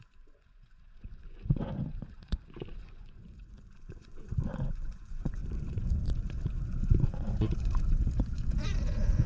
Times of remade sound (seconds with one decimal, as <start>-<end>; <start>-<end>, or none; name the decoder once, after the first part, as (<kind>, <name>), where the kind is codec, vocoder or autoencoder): 0.0-9.3 (vocoder, Vocos)